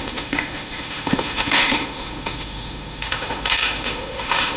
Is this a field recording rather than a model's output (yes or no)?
no